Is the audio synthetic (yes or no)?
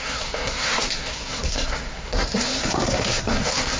yes